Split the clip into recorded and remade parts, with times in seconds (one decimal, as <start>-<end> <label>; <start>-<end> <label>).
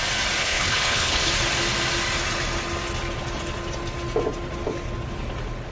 0.0-0.4 recorded; 0.4-1.3 remade; 1.3-5.7 recorded